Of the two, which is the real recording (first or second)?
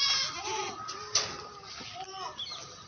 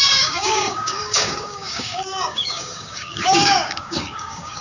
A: first